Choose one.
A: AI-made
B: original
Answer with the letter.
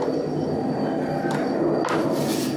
B